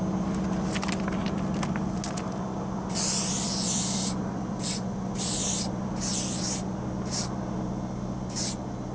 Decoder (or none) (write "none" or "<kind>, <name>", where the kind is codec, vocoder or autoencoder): none